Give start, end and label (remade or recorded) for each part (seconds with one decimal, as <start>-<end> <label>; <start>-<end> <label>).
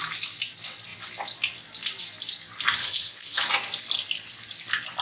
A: 0.0-2.8 recorded; 2.8-3.5 remade; 3.5-5.0 recorded